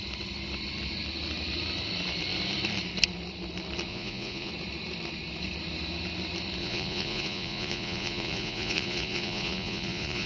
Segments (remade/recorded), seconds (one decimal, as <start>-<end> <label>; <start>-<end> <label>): 0.0-3.9 recorded; 3.9-4.5 remade; 4.5-6.6 recorded; 6.6-10.3 remade